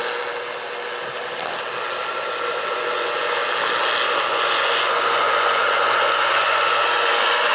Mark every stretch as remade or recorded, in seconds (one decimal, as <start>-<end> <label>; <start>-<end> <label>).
0.0-2.5 recorded; 2.5-3.4 remade; 3.4-4.3 recorded; 4.3-7.5 remade